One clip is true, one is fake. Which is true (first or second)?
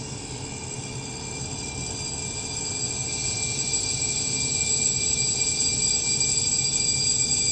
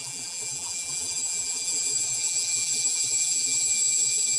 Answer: first